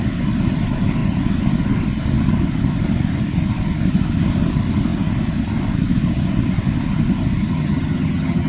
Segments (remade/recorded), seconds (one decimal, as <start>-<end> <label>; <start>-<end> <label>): 0.0-7.5 recorded; 7.5-8.5 remade